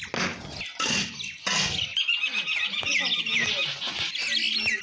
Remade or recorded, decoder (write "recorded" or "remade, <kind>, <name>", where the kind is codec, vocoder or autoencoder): recorded